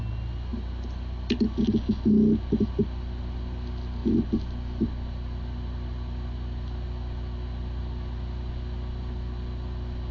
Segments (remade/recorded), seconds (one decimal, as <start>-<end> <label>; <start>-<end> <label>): 0.0-10.1 recorded